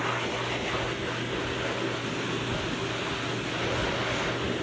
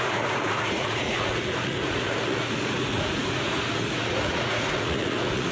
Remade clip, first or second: second